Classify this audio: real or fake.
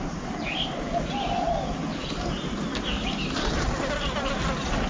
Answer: real